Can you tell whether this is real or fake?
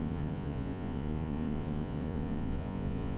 fake